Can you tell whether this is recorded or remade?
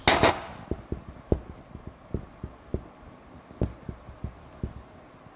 recorded